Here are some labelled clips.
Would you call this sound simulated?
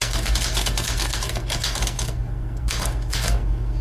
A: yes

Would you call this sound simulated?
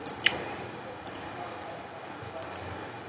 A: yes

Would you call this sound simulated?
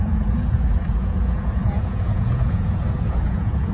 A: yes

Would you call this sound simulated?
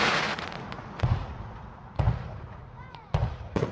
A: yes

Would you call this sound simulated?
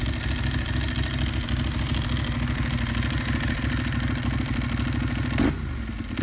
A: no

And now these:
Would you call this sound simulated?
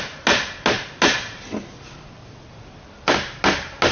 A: no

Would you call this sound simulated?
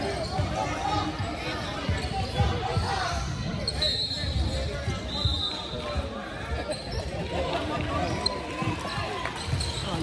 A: no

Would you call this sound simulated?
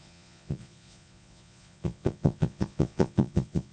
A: yes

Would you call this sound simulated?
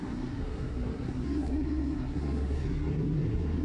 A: yes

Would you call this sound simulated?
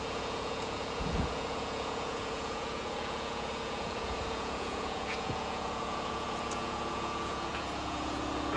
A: yes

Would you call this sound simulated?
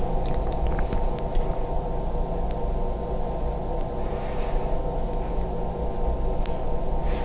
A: no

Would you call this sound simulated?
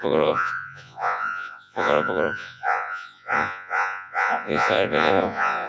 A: yes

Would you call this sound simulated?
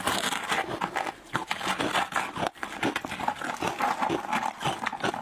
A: no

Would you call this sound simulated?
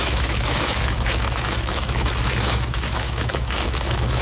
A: yes